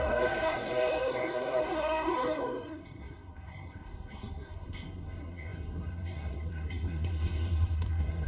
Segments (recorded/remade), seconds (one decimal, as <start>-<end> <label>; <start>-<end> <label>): 0.0-8.3 remade